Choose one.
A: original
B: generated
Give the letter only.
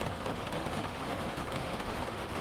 B